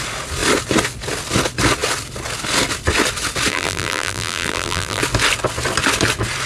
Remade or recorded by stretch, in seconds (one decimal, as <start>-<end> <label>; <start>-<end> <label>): 0.0-3.5 recorded; 3.5-5.0 remade; 5.0-6.5 recorded